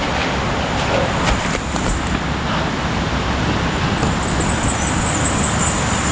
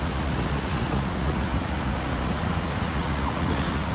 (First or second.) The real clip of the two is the first